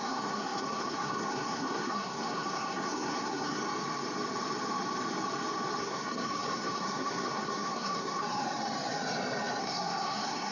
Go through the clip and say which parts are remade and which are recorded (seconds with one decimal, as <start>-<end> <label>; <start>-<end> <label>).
0.0-3.6 remade; 3.6-5.8 recorded; 5.8-8.2 remade; 8.2-9.6 recorded; 9.6-10.5 remade